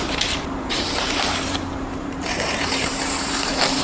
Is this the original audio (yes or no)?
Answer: no